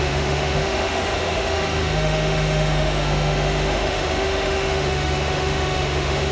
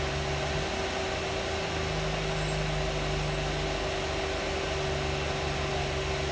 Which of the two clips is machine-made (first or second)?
first